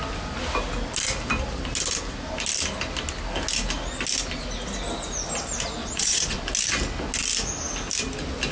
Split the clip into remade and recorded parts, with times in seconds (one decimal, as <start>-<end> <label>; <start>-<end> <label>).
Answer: 0.0-5.8 recorded; 5.8-6.4 remade; 6.4-8.5 recorded